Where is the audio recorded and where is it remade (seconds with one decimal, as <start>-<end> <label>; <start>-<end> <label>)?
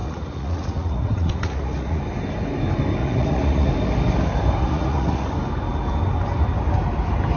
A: 0.0-2.0 remade; 2.0-3.0 recorded; 3.0-3.7 remade; 3.7-4.6 recorded; 4.6-5.3 remade; 5.3-7.4 recorded